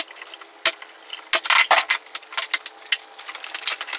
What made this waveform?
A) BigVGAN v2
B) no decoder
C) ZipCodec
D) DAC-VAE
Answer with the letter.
B